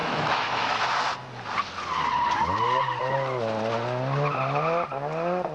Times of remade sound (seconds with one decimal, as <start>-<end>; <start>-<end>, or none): 0.0-0.8

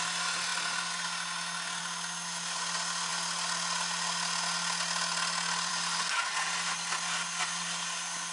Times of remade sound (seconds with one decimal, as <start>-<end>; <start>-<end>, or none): none

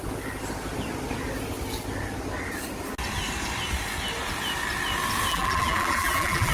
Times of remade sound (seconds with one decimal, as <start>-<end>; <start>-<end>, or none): 5.3-6.5